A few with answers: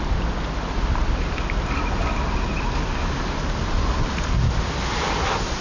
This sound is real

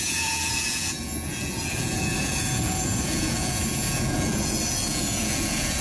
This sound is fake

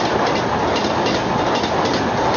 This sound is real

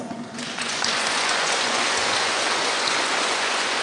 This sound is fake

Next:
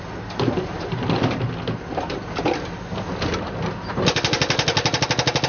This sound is real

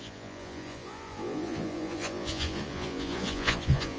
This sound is fake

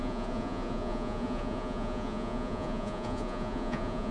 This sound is fake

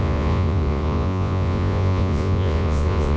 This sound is fake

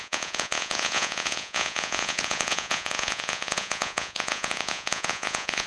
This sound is fake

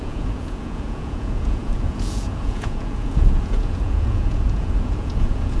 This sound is fake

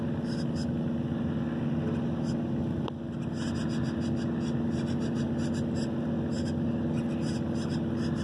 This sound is real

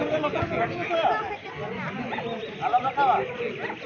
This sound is real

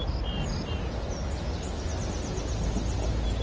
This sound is real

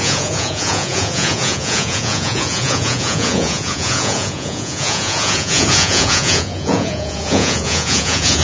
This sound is fake